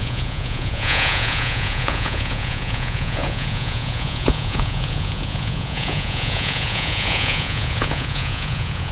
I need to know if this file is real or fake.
fake